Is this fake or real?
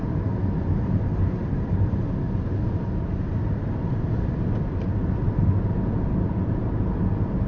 real